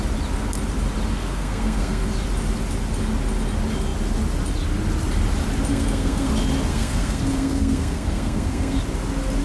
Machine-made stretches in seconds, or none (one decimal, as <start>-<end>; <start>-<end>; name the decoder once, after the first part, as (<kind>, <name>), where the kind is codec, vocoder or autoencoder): 1.1-2.0 (codec, SNAC); 5.7-6.3; 6.7-8.8